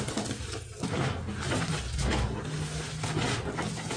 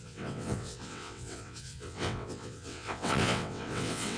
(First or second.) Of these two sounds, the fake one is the second